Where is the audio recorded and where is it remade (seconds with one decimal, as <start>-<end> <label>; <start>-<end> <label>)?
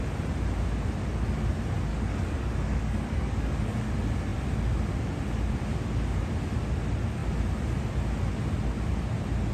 0.0-1.9 recorded; 1.9-3.9 remade; 3.9-9.5 recorded